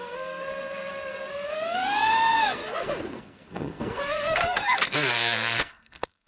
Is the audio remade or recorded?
remade